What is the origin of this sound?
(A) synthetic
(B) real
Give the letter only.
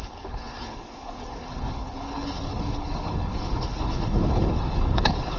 A